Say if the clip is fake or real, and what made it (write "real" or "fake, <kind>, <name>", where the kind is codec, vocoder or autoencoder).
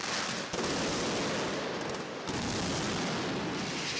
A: real